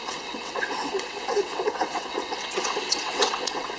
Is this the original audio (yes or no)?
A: no